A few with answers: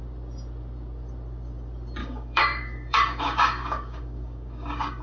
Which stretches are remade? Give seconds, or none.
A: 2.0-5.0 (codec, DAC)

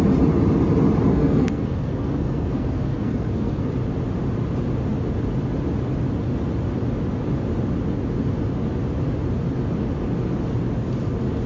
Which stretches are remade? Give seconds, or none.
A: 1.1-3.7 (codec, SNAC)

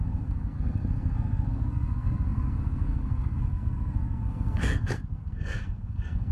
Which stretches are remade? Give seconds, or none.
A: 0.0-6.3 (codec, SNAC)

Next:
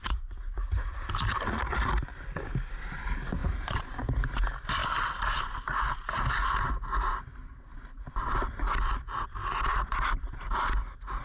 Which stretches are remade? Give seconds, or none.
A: 3.4-4.3 (vocoder, BigVGAN v2); 9.7-11.2

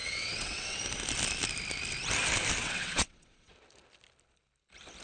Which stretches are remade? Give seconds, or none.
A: 0.0-0.8 (vocoder, WaveNeXt); 2.6-3.5

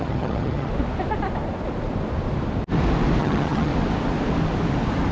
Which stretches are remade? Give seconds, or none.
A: 0.0-0.7 (vocoder, HiFi-GAN); 3.2-3.7